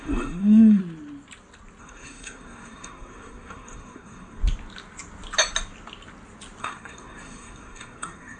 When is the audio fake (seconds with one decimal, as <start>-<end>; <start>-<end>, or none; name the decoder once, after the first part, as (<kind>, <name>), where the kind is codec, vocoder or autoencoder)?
0.0-0.8 (codec, SNAC); 1.8-4.4; 6.6-8.4